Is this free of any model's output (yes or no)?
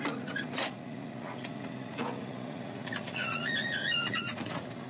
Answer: no